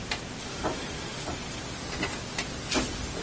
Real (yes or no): yes